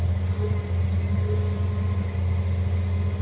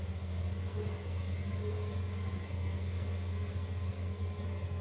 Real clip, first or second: first